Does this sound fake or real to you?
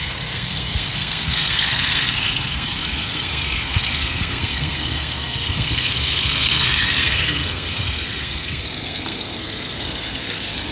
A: fake